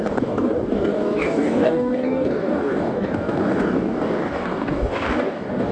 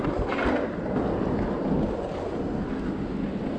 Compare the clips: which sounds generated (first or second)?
first